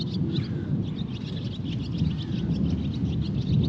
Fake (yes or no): no